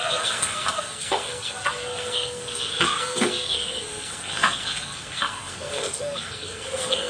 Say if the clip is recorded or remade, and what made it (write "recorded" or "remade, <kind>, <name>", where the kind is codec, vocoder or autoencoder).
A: remade, codec, SNAC